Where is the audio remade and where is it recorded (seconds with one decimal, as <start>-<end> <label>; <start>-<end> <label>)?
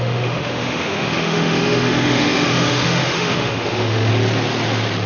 0.0-4.1 remade; 4.1-5.1 recorded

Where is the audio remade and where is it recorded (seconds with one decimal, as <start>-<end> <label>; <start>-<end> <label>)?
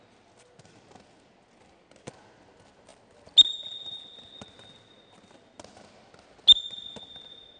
0.0-7.6 recorded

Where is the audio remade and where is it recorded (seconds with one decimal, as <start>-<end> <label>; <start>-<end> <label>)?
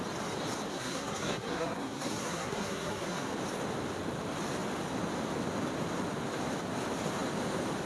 0.0-0.7 recorded; 0.7-3.3 remade; 3.3-7.9 recorded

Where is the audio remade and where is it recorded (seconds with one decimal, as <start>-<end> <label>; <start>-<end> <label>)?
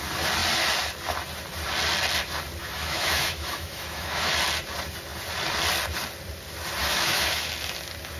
0.0-2.6 recorded; 2.6-4.3 remade; 4.3-6.8 recorded; 6.8-7.5 remade; 7.5-8.2 recorded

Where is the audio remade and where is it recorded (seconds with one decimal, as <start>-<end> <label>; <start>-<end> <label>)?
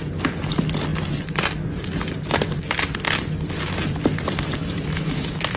0.0-4.6 recorded; 4.6-5.6 remade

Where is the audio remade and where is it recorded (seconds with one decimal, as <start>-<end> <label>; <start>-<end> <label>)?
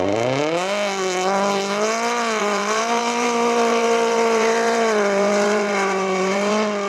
0.0-2.4 recorded; 2.4-6.5 remade; 6.5-6.9 recorded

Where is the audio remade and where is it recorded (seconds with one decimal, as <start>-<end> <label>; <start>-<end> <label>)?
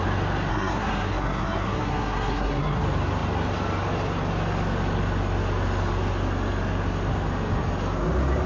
0.0-0.5 recorded; 0.5-2.8 remade; 2.8-8.5 recorded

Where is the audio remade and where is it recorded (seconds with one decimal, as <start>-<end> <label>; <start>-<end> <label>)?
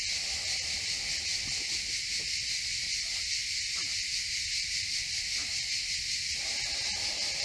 0.0-7.4 recorded